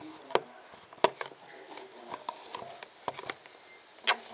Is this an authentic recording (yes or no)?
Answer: yes